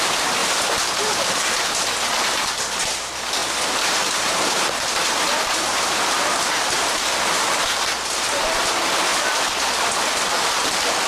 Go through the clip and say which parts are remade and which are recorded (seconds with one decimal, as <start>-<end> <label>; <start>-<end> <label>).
0.0-11.1 remade